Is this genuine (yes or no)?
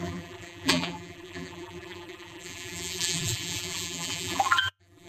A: no